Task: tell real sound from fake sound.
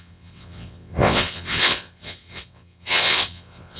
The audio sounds fake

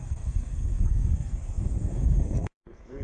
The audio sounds fake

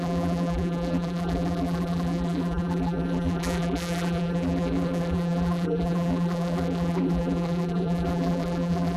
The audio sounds fake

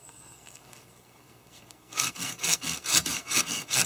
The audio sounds fake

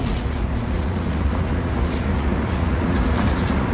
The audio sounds fake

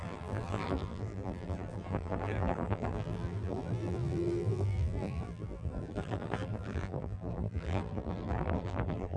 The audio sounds fake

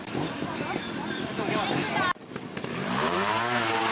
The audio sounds fake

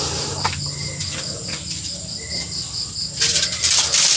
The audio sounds real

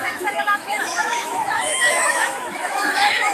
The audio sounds fake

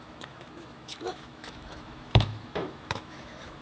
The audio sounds fake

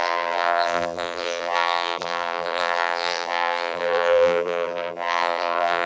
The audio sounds fake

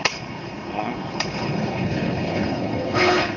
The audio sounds fake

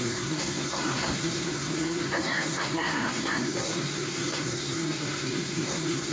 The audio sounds fake